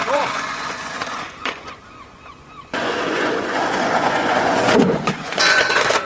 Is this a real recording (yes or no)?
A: no